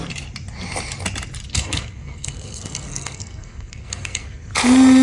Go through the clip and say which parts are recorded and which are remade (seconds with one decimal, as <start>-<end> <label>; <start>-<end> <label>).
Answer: 0.0-1.5 recorded; 1.5-4.5 remade; 4.5-5.0 recorded